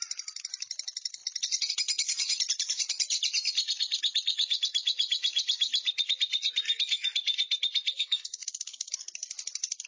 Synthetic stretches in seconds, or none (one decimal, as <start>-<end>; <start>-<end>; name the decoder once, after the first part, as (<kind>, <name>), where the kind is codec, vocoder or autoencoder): 7.9-8.9 (codec, SNAC)

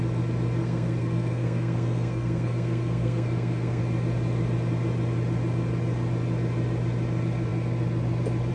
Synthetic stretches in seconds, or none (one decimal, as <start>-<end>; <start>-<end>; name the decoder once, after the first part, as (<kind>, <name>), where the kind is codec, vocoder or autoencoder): 0.6-3.8 (codec, SNAC)

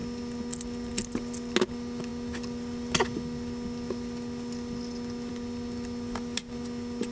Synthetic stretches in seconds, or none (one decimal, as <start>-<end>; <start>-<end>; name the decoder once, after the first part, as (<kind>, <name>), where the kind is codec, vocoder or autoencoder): none

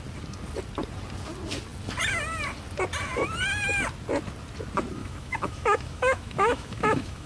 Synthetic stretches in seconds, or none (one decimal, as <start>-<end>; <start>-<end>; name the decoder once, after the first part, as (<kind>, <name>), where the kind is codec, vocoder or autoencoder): 5.0-7.3 (autoencoder, DAC-VAE)

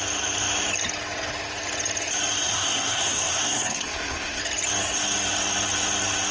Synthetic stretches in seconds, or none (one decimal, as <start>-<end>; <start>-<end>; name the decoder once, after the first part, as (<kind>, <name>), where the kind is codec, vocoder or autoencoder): 2.4-4.4 (codec, SNAC)

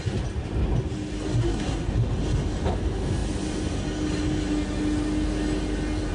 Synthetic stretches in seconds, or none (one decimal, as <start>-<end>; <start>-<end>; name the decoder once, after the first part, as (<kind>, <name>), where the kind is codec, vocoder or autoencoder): 1.4-1.9 (codec, SNAC)

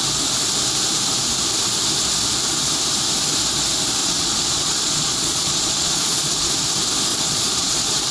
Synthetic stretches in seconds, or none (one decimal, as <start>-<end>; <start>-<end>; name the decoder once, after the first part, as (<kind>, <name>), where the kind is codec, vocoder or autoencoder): 4.0-6.5 (vocoder, Vocos); 7.1-8.1

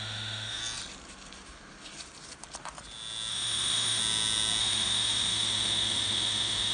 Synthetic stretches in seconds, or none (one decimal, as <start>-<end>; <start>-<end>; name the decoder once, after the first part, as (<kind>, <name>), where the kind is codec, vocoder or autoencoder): 0.0-0.6 (autoencoder, DAC-VAE); 3.3-4.0; 4.6-6.7